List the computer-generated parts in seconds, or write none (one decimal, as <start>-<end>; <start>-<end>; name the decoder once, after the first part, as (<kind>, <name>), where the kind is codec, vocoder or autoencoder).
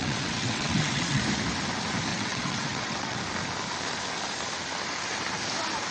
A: 0.0-1.2 (vocoder, WaveNeXt); 2.1-3.2